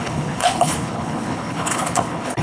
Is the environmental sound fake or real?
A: fake